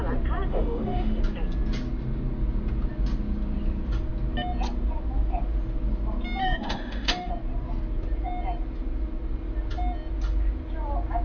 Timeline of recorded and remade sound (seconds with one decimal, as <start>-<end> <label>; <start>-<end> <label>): 0.0-0.5 recorded; 0.5-1.2 remade; 1.2-6.4 recorded; 6.4-7.3 remade; 7.3-11.2 recorded